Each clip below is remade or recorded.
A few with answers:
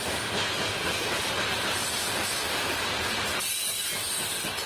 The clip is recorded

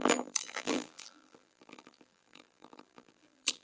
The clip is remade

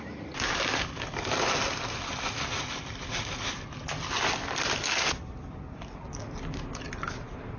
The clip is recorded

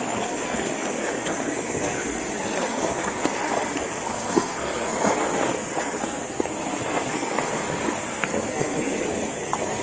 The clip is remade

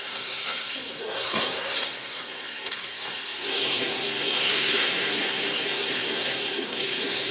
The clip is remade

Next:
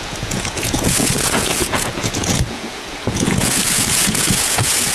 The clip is remade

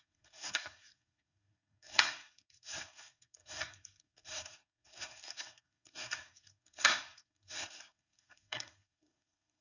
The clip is remade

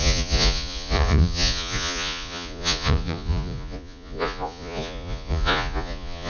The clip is remade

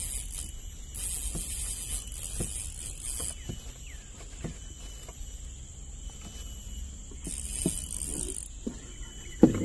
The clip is recorded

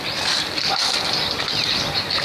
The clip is recorded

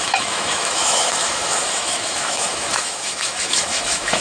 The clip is remade